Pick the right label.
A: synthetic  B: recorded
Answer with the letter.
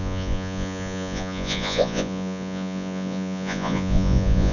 A